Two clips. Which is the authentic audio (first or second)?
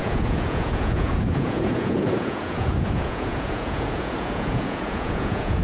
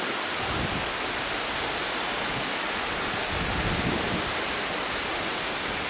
second